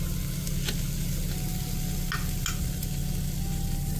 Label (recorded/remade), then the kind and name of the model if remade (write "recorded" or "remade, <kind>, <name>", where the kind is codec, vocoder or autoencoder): recorded